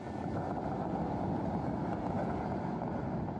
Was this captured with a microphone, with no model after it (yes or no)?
yes